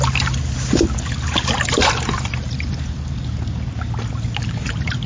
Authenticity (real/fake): real